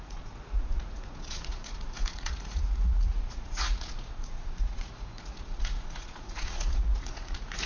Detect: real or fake fake